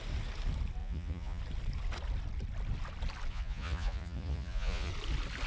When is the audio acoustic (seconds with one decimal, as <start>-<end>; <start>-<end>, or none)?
0.0-0.8; 1.4-3.3; 4.9-5.5